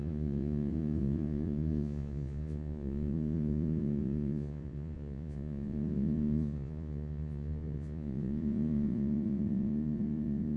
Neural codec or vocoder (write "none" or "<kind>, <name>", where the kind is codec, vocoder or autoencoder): vocoder, Vocos